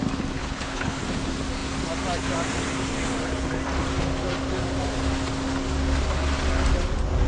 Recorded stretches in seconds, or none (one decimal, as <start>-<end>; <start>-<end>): 0.0-0.4; 1.0-7.3